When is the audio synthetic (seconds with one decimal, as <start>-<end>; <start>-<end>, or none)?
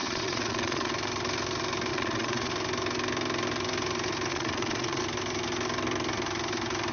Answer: 0.0-0.9; 1.9-2.5; 4.3-5.0